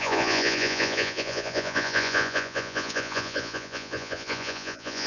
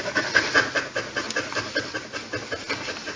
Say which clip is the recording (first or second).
second